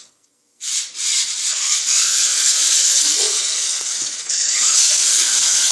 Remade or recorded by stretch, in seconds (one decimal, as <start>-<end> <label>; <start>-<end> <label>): 0.0-0.7 remade; 0.7-1.5 recorded; 1.5-5.7 remade